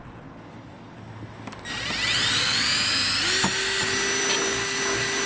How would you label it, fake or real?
real